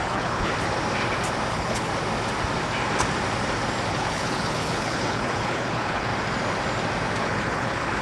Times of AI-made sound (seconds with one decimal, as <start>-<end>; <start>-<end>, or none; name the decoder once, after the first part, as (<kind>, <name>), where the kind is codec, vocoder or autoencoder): 0.0-0.5 (codec, HILCodec); 1.5-1.9; 3.9-6.1; 7.2-8.0